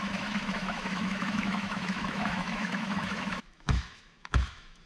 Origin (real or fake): fake